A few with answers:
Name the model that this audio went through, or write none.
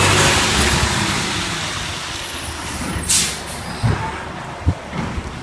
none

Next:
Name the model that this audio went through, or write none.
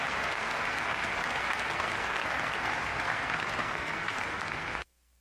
codec, SNAC